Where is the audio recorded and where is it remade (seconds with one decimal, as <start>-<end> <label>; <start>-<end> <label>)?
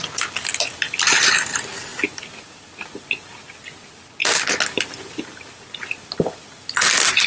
0.0-7.3 recorded